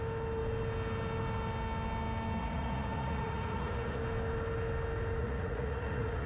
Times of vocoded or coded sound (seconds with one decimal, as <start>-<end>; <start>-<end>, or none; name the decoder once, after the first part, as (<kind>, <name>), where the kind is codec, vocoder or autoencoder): 2.4-4.0 (vocoder, Vocos); 5.2-6.3